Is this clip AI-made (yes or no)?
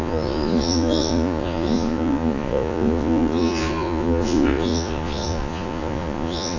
yes